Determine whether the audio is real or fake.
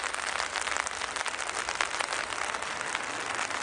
real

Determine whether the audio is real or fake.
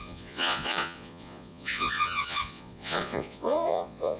fake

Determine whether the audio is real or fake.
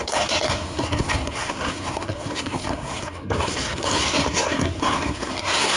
fake